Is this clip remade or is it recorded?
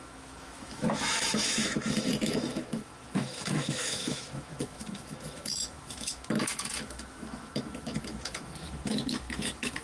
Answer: remade